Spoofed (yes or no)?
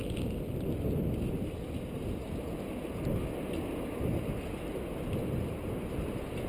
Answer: no